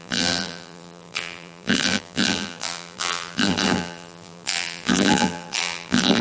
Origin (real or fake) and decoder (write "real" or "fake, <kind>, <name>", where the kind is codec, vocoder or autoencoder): fake, vocoder, BigVGAN v2